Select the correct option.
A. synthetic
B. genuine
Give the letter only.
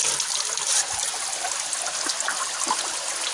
B